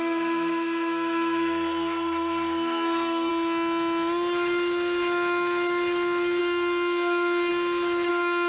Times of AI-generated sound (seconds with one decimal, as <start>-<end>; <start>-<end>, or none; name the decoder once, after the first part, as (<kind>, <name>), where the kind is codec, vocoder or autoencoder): 0.0-3.3 (codec, SNAC); 6.4-7.5; 8.1-8.5